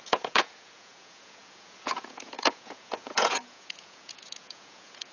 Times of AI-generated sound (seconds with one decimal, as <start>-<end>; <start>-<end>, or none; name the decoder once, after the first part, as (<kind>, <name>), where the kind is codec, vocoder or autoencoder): 0.0-5.1 (vocoder, Vocos)